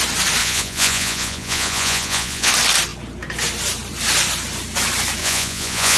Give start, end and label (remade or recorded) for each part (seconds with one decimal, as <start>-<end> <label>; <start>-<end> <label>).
0.0-0.4 recorded; 0.4-2.5 remade; 2.5-5.2 recorded; 5.2-6.0 remade